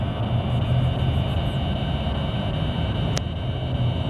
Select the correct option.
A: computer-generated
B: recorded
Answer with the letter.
B